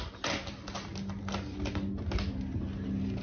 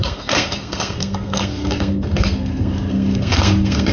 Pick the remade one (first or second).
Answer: second